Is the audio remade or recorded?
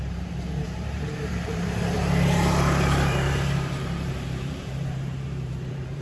remade